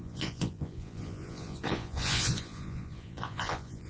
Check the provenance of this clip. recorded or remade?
remade